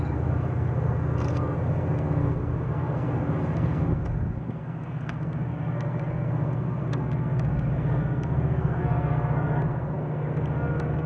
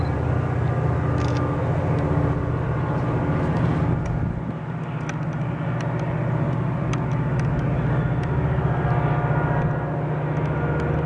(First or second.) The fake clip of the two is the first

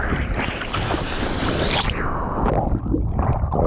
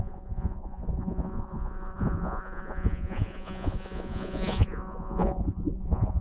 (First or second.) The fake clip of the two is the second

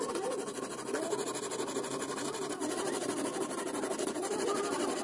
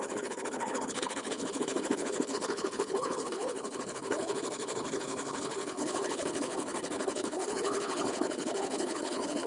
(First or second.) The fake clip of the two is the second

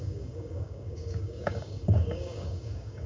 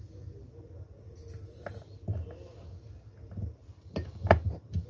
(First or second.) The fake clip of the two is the first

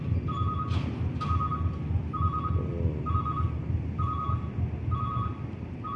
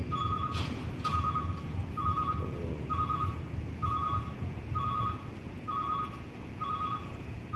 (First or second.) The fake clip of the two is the second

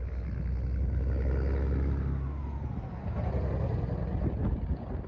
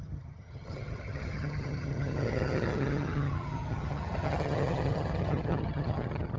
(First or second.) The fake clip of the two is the second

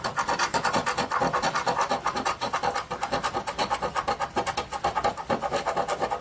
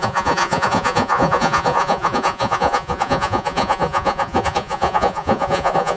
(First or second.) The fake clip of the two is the second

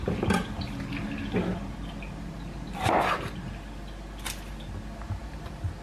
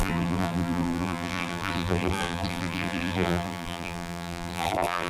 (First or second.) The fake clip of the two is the second